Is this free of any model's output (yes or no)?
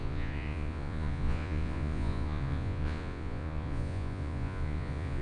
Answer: no